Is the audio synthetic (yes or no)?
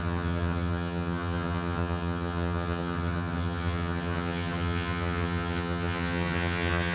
yes